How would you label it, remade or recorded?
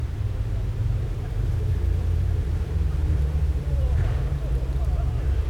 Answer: remade